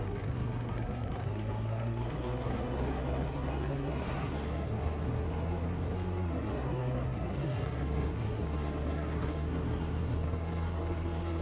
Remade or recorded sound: remade